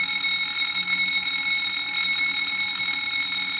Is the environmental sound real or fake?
real